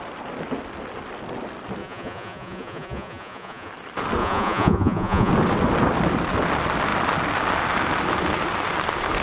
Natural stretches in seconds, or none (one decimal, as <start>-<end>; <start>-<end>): 0.0-1.8; 3.7-4.2; 5.3-9.2